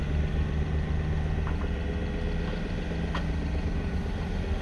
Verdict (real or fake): real